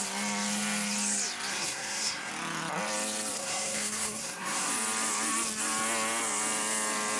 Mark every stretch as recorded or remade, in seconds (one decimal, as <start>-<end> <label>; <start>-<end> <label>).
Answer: 0.0-1.5 recorded; 1.5-2.3 remade; 2.3-3.4 recorded; 3.4-4.7 remade; 4.7-7.2 recorded